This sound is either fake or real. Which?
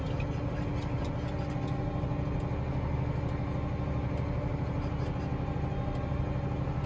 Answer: real